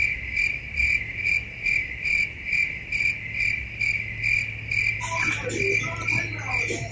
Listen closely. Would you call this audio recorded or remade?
recorded